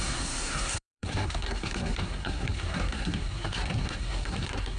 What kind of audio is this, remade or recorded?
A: remade